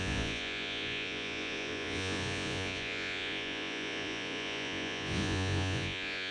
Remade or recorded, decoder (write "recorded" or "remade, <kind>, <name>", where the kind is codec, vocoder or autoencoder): remade, vocoder, Vocos